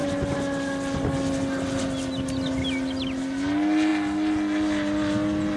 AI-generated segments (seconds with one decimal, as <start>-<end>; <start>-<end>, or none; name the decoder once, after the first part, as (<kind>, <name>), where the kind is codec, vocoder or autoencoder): none